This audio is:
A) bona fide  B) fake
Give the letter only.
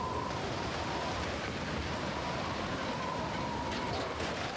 A